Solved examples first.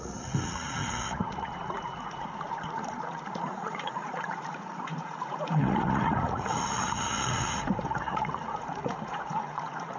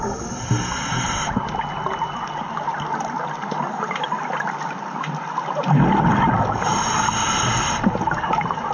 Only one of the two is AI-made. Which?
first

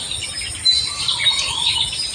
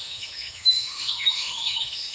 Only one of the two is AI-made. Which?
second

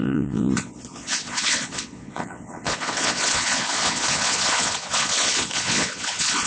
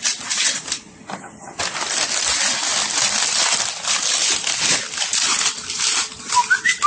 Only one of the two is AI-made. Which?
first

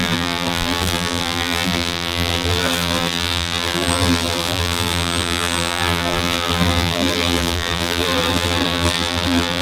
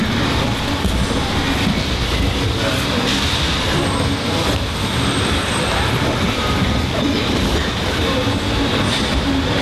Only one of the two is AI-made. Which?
first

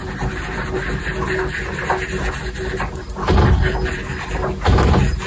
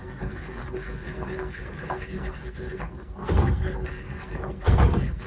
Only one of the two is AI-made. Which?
second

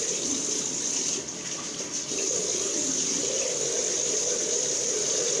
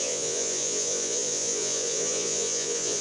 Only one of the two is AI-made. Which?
second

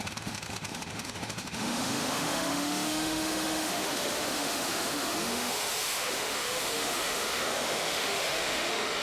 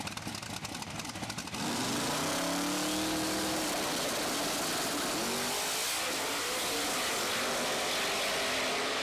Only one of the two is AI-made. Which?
first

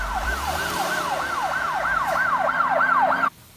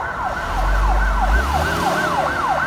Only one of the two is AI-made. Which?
first